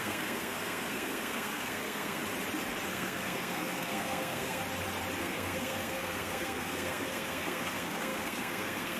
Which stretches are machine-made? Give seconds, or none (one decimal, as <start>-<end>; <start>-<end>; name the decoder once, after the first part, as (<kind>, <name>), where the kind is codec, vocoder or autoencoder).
0.0-2.2 (codec, SNAC); 2.9-4.6; 5.2-9.0